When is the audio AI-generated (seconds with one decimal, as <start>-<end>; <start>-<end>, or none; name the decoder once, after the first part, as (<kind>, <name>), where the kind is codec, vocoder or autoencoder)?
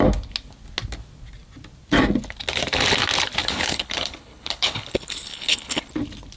3.4-5.9 (codec, HILCodec)